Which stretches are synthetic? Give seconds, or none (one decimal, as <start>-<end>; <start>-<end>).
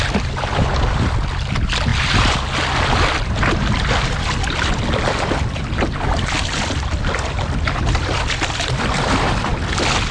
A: none